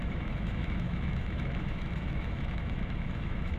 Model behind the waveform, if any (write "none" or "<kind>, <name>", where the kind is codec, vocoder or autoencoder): autoencoder, DAC-VAE